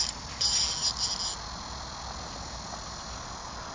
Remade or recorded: recorded